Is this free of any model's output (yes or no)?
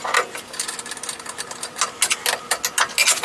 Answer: yes